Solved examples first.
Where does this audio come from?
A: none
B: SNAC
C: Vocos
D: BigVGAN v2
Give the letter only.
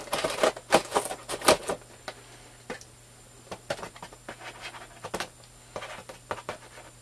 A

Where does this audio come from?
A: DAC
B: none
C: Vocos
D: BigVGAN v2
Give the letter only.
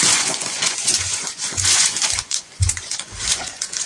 C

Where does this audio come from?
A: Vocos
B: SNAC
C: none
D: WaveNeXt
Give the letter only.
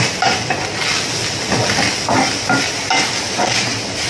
C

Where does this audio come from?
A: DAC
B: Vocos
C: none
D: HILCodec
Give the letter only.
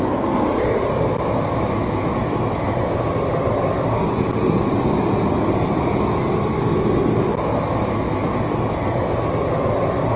C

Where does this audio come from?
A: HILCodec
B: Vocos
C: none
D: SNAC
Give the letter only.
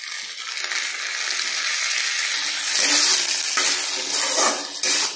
C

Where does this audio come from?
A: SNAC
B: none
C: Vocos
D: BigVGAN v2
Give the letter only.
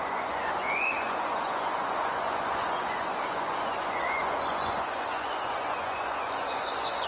C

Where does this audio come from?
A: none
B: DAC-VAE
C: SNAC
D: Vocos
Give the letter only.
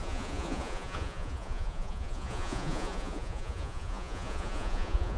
D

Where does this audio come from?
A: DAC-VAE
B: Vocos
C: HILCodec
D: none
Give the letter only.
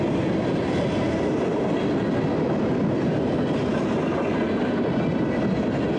D